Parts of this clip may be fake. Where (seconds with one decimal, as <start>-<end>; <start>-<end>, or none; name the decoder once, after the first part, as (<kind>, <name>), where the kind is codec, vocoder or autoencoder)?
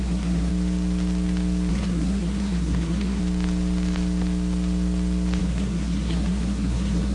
0.0-0.5 (codec, SNAC); 1.7-3.2; 5.4-7.1